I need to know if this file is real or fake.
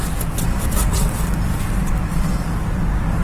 fake